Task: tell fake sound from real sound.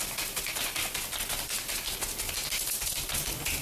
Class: real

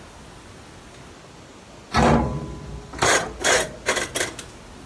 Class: real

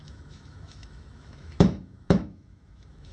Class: fake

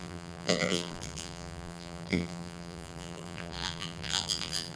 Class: fake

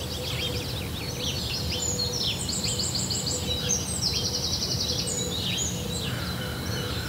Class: real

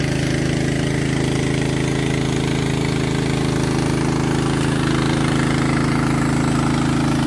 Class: real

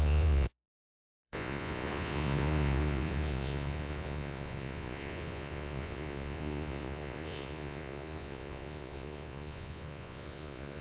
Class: fake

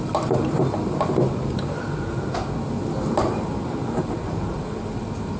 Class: real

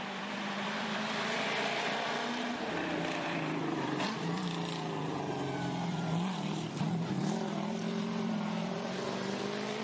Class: fake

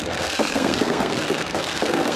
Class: fake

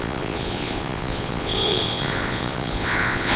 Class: fake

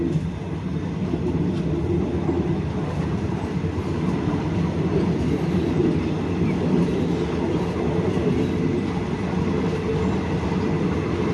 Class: real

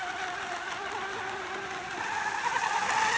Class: real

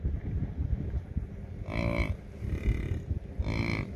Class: real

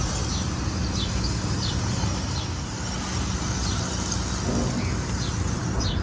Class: real